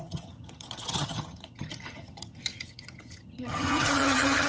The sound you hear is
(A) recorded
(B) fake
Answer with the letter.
B